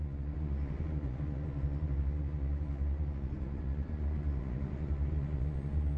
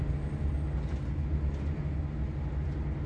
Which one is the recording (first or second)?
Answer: second